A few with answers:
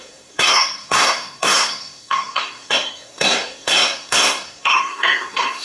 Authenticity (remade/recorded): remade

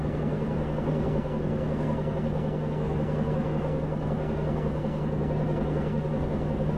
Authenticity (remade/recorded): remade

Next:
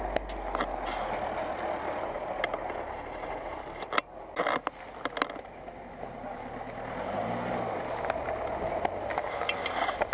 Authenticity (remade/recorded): recorded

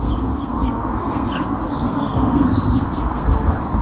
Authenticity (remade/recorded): remade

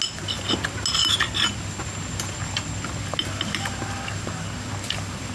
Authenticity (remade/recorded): recorded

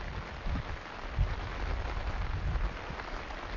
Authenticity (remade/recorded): recorded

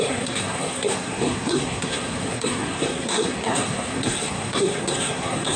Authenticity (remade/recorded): remade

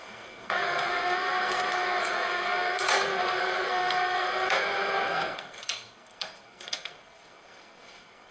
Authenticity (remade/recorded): remade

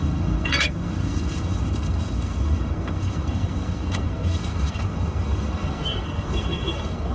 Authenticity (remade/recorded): remade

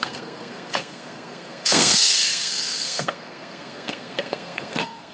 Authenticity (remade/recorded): remade